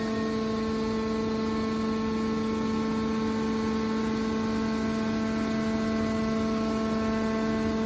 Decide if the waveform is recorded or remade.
recorded